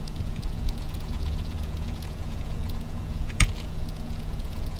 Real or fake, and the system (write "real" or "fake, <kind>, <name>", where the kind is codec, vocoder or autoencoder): fake, vocoder, Vocos